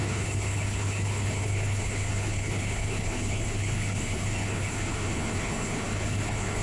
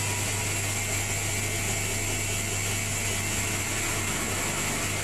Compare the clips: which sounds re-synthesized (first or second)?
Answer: first